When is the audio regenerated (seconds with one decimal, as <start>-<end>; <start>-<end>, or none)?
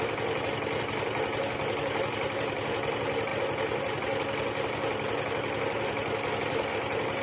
none